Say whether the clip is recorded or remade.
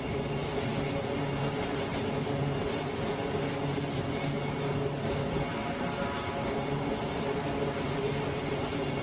recorded